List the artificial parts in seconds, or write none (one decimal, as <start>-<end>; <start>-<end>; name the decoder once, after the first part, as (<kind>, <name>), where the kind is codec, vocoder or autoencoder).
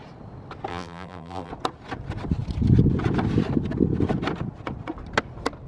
0.7-1.5 (vocoder, BigVGAN v2)